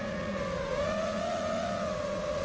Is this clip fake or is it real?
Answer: fake